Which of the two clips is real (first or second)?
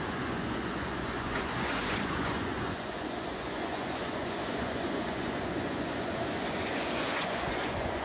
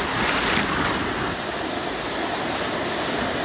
second